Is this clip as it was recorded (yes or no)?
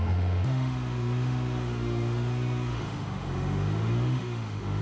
no